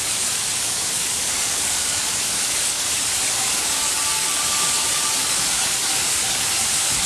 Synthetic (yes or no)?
yes